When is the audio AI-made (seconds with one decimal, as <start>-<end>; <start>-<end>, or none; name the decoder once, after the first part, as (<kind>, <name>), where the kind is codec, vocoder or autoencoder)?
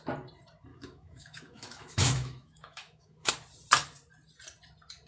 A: 0.7-3.3 (autoencoder, DAC-VAE)